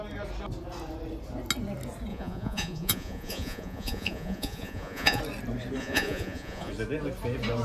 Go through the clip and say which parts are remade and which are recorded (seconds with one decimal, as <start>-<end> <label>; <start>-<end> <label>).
0.0-2.1 recorded; 2.1-5.2 remade; 5.2-5.8 recorded; 5.8-6.7 remade; 6.7-7.6 recorded